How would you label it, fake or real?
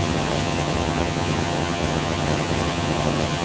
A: fake